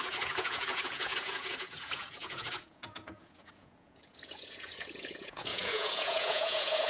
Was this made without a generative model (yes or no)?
no